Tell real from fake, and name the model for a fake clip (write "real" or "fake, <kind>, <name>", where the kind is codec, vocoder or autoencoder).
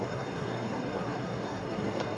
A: fake, codec, SNAC